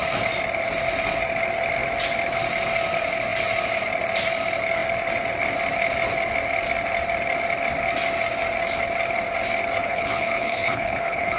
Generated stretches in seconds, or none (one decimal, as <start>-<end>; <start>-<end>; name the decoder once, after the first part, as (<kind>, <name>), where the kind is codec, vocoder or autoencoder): 9.8-11.4 (codec, HILCodec)